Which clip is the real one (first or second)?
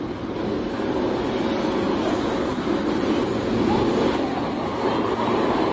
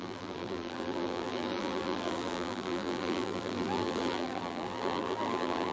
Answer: first